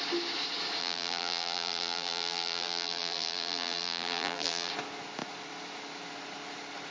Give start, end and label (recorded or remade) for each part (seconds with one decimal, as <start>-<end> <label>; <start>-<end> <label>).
0.0-0.8 recorded; 0.8-4.7 remade; 4.7-6.9 recorded